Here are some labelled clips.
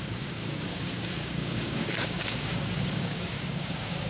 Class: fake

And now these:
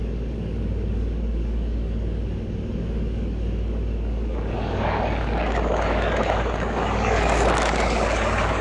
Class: fake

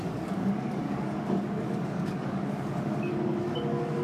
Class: fake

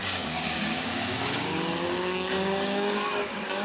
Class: fake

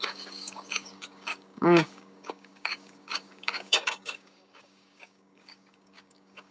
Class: fake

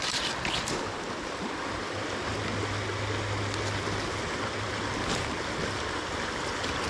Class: real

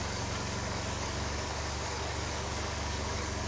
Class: fake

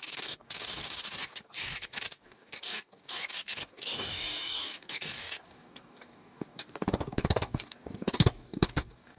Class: fake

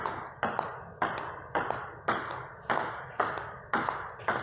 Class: real